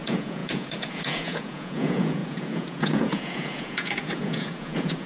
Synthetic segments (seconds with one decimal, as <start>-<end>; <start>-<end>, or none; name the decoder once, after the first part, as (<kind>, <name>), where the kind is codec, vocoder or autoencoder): 0.0-5.1 (vocoder, Vocos)